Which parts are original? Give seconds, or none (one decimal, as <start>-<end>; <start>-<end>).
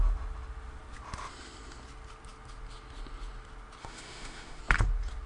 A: 0.0-3.8; 4.6-5.3